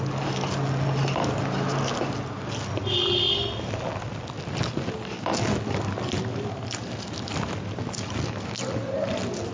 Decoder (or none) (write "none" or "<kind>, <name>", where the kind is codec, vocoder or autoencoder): none